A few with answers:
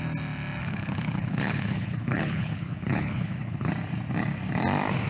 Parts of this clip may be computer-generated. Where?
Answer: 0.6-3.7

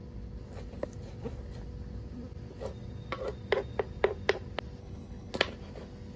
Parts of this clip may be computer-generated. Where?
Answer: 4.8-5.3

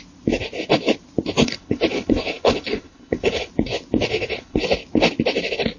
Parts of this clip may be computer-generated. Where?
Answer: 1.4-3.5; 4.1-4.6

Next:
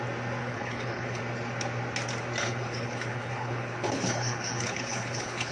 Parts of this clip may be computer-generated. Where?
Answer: 0.4-1.2; 2.4-5.5

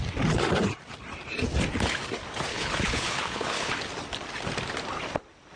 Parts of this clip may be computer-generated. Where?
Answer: 2.5-3.7

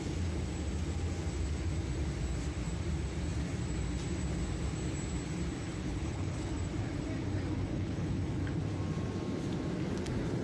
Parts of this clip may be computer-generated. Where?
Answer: 5.7-6.5; 7.7-8.2